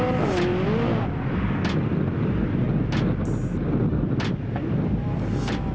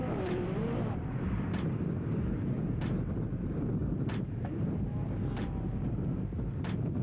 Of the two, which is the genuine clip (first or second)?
first